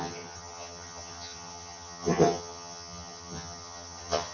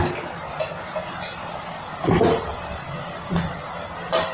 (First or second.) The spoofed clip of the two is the first